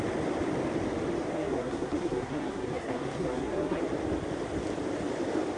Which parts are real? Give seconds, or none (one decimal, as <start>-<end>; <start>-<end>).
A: 0.0-1.3; 3.8-5.6